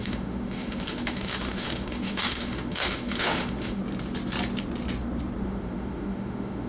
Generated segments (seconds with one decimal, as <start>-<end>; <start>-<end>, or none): 0.0-3.8; 5.4-6.7